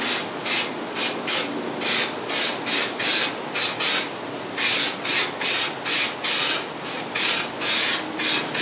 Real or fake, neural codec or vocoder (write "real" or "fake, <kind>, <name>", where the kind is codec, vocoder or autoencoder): real